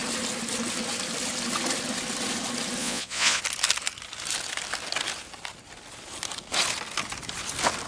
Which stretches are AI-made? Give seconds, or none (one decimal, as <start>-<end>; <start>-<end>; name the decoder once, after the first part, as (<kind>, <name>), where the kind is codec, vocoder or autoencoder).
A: 2.8-3.4 (vocoder, Vocos)